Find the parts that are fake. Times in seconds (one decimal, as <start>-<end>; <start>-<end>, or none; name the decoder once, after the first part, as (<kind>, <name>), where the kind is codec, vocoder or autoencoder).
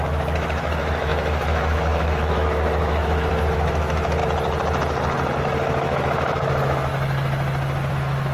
0.0-4.2 (autoencoder, DAC-VAE); 5.4-6.9; 7.9-8.3